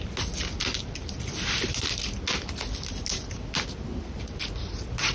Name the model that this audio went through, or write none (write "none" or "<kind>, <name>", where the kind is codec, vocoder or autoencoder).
none